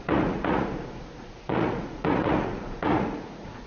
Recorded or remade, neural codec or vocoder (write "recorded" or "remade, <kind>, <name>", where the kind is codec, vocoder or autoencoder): remade, vocoder, Vocos